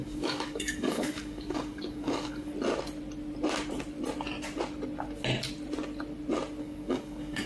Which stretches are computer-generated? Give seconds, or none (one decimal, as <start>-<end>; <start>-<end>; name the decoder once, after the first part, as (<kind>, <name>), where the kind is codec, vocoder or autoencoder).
0.0-2.5 (codec, DAC); 6.6-7.5